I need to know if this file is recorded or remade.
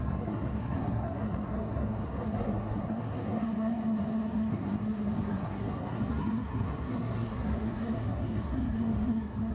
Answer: remade